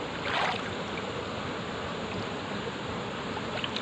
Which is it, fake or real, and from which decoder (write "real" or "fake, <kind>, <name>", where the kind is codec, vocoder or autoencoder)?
real